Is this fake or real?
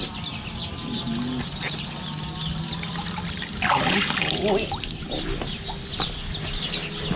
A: real